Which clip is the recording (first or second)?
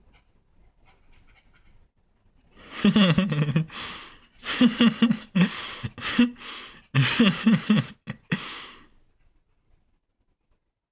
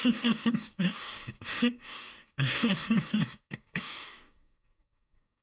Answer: first